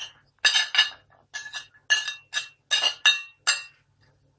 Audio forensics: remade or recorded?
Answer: recorded